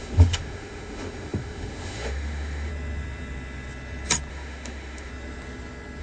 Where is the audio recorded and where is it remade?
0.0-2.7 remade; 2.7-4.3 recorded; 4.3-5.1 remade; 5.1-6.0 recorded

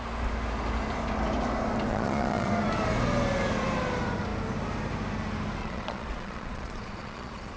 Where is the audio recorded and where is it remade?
0.0-1.9 recorded; 1.9-2.5 remade; 2.5-5.6 recorded; 5.6-7.6 remade

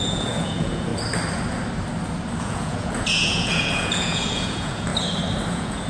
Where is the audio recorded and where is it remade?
0.0-0.9 remade; 0.9-2.4 recorded; 2.4-4.9 remade; 4.9-5.5 recorded; 5.5-5.9 remade

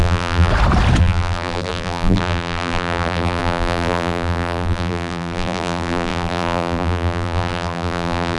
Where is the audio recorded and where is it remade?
0.0-0.5 remade; 0.5-1.0 recorded; 1.0-8.4 remade